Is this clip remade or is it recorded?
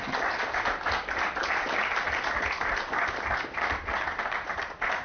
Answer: recorded